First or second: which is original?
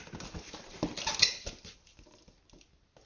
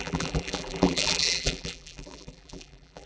first